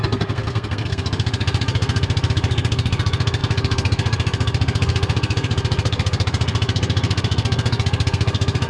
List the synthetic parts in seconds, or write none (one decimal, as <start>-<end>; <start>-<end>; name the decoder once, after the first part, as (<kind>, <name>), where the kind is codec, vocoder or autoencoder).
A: 0.0-8.7 (codec, SNAC)